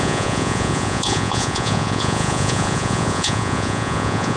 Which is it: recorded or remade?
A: remade